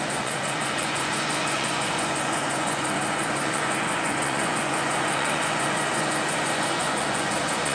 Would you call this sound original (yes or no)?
no